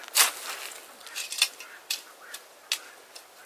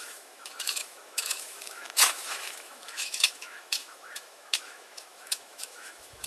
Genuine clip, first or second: first